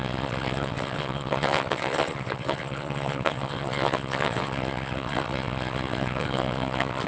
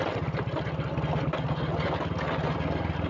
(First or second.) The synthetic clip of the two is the first